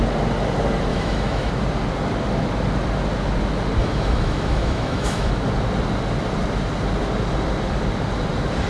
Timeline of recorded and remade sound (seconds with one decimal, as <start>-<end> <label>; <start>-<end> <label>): 0.0-0.9 recorded; 0.9-1.5 remade; 1.5-3.8 recorded; 3.8-5.3 remade; 5.3-8.7 recorded